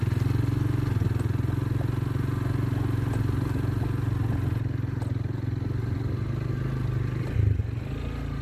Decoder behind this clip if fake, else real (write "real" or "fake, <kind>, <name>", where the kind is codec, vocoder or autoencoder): real